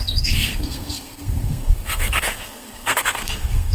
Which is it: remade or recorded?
remade